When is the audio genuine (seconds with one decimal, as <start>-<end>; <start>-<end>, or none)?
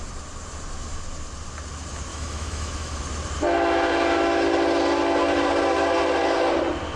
0.0-2.1; 3.0-7.0